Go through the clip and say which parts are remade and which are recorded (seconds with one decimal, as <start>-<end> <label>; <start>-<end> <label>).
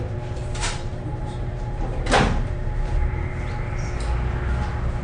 0.0-0.5 recorded; 0.5-3.3 remade; 3.3-5.0 recorded